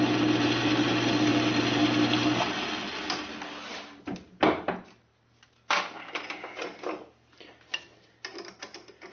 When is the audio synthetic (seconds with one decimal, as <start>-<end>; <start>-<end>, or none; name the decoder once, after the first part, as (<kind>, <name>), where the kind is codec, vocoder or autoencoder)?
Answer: none